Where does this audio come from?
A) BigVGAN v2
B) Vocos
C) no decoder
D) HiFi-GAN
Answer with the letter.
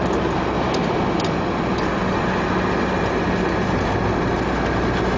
C